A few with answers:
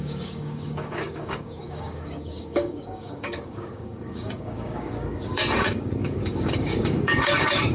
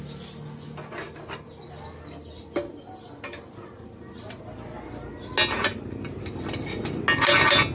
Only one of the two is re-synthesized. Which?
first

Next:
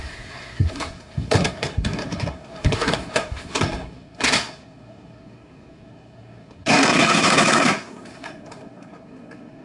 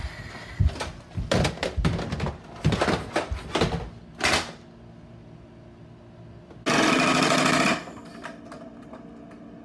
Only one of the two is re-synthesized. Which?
first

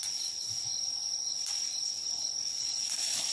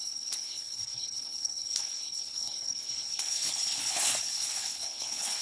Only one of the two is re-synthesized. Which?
second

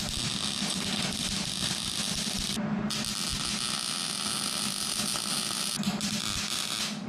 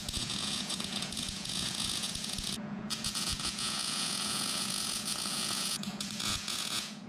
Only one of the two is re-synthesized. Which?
second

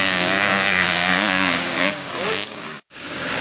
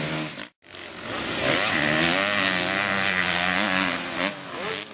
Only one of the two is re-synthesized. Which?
first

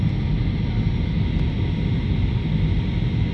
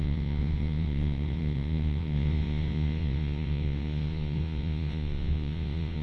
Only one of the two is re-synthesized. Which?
second